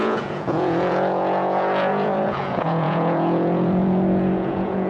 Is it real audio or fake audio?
fake